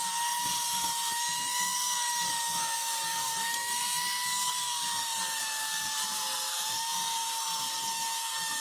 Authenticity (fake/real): fake